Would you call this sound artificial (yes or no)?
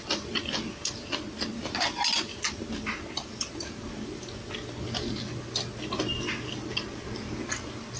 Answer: no